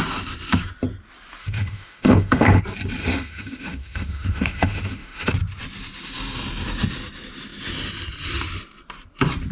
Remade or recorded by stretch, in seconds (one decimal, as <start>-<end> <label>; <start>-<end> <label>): 0.0-1.4 recorded; 1.4-2.6 remade; 2.6-3.0 recorded; 3.0-5.3 remade; 5.3-9.5 recorded